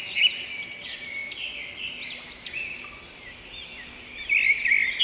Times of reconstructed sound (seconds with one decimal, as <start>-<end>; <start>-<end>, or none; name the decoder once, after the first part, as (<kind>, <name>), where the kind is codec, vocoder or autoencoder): none